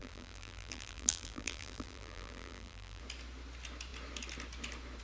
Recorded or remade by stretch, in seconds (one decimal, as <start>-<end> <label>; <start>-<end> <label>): 0.0-3.0 remade; 3.0-5.0 recorded